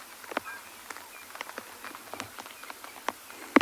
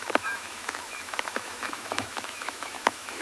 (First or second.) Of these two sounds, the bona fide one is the first